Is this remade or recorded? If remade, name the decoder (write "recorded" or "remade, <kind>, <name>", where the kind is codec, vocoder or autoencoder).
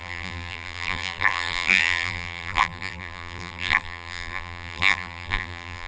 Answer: remade, vocoder, BigVGAN v2